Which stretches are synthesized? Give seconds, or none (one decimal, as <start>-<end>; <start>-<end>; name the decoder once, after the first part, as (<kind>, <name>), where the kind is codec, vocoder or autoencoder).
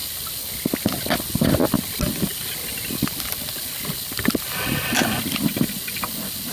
none